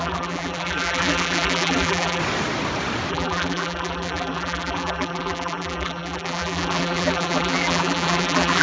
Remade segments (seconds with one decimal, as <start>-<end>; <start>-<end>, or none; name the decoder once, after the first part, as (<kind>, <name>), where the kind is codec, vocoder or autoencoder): 0.0-2.2 (vocoder, BigVGAN v2); 3.1-8.6